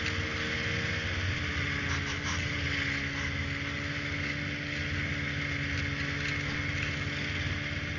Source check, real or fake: real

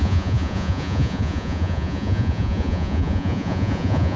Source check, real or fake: fake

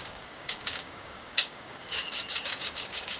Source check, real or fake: fake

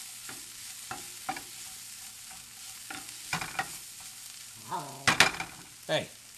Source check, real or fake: real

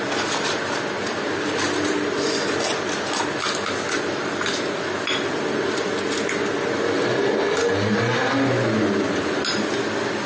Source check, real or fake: real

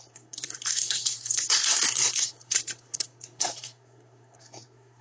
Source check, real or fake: fake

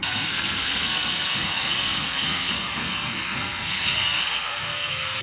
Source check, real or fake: fake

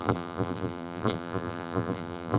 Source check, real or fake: fake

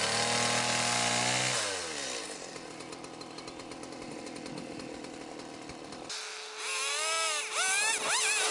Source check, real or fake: real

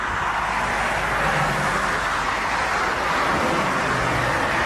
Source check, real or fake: real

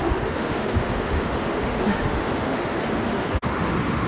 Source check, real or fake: fake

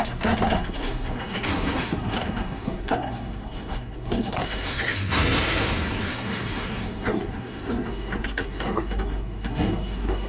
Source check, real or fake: fake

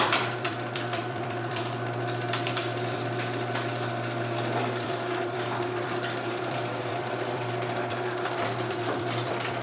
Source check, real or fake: fake